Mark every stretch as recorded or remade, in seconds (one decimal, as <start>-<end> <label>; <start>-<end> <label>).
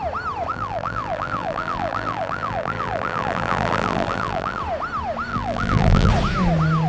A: 0.0-0.5 recorded; 0.5-4.6 remade; 4.6-5.3 recorded; 5.3-6.1 remade; 6.1-6.9 recorded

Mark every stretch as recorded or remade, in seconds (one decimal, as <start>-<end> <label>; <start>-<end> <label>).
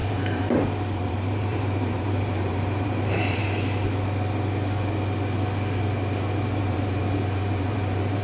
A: 0.0-3.4 remade; 3.4-6.6 recorded; 6.6-8.2 remade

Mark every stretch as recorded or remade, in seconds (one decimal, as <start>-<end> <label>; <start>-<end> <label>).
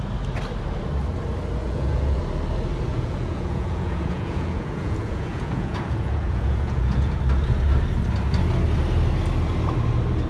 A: 0.0-1.6 recorded; 1.6-2.2 remade; 2.2-2.9 recorded; 2.9-7.2 remade; 7.2-10.3 recorded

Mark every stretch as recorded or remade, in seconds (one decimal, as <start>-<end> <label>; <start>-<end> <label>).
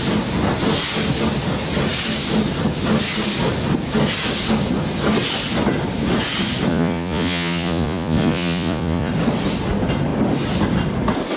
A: 0.0-6.7 recorded; 6.7-9.1 remade; 9.1-11.4 recorded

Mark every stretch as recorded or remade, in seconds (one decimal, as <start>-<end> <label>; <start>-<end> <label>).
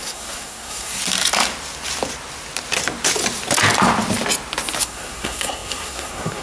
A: 0.0-1.0 remade; 1.0-4.8 recorded; 4.8-6.4 remade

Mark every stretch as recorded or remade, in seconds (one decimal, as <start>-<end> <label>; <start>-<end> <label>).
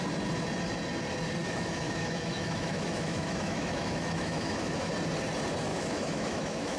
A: 0.0-1.4 recorded; 1.4-4.9 remade; 4.9-5.7 recorded; 5.7-6.8 remade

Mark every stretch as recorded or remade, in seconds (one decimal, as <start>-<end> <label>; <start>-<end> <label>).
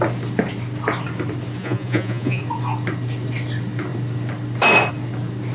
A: 0.0-1.6 recorded; 1.6-2.4 remade; 2.4-5.5 recorded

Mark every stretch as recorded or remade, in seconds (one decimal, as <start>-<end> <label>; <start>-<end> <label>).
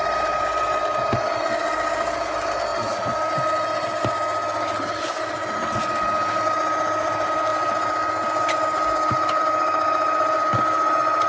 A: 0.0-11.3 recorded